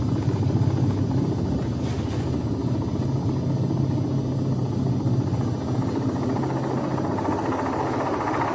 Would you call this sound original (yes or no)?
yes